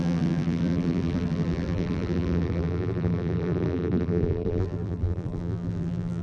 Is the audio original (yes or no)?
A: no